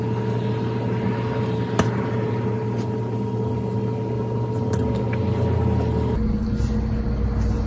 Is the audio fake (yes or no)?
no